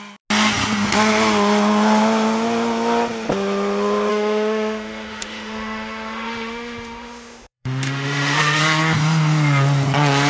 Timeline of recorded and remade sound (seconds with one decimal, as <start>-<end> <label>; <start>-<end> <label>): 0.0-4.1 recorded; 4.1-8.6 remade; 8.6-10.3 recorded